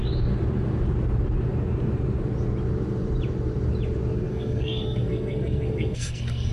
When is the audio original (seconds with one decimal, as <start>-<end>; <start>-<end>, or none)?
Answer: 0.0-4.3